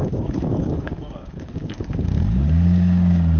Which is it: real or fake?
fake